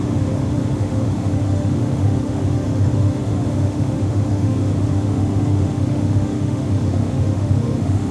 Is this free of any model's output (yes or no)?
no